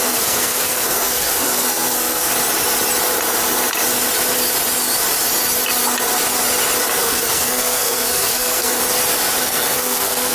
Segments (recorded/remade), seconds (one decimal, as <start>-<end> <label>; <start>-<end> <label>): 0.0-2.3 remade; 2.3-7.0 recorded; 7.0-8.8 remade; 8.8-9.4 recorded; 9.4-10.3 remade